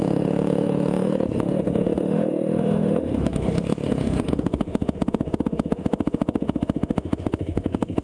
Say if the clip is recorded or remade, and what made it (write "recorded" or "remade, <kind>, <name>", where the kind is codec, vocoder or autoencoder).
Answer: remade, autoencoder, DAC-VAE